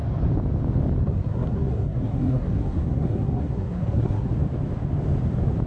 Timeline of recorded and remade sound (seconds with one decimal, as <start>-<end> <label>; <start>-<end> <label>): 0.0-1.0 recorded; 1.0-4.3 remade; 4.3-5.7 recorded